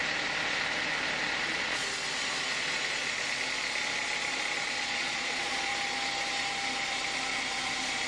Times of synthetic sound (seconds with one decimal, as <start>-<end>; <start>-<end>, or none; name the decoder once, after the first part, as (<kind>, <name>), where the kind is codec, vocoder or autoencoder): 1.4-1.8 (vocoder, Vocos); 4.6-5.7